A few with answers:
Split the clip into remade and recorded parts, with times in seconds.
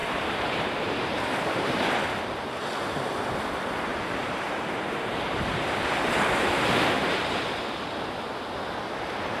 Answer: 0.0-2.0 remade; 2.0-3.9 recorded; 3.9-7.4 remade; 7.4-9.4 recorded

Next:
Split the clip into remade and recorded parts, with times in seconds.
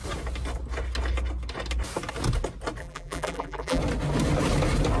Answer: 0.0-2.8 recorded; 2.8-3.8 remade; 3.8-5.0 recorded